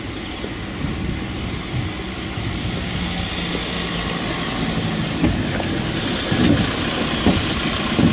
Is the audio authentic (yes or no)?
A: yes